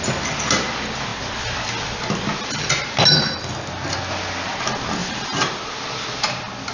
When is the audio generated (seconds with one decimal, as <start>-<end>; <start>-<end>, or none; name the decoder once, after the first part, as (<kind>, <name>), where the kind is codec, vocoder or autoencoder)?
5.0-5.5 (vocoder, BigVGAN v2)